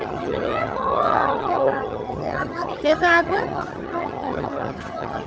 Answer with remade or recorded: remade